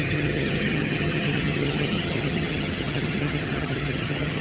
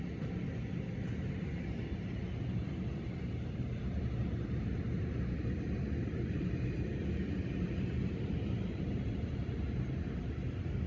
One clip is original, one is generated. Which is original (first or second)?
second